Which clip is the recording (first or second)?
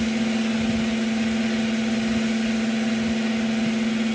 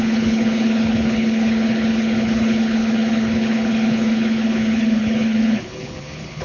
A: first